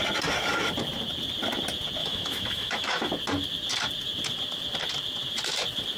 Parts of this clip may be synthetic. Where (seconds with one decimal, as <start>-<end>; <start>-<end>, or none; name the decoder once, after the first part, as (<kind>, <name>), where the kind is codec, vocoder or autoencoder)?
2.0-3.1 (autoencoder, DAC-VAE)